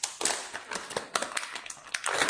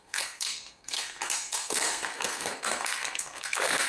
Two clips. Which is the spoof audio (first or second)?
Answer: second